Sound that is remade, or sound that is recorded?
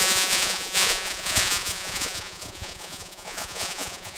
remade